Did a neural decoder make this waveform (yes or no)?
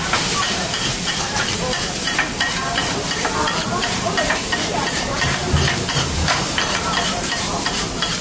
yes